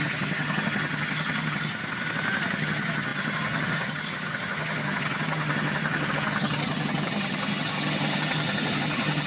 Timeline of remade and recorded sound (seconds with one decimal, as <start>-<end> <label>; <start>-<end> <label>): 0.0-1.7 remade; 1.7-2.5 recorded; 2.5-9.3 remade